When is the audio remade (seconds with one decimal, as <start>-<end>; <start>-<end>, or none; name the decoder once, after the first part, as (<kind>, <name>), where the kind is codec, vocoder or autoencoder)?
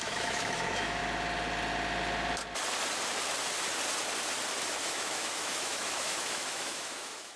0.0-1.0 (autoencoder, DAC-VAE); 4.8-7.4